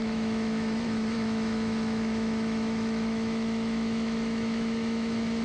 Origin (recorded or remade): remade